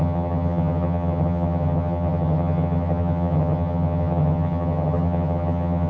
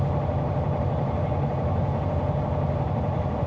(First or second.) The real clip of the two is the second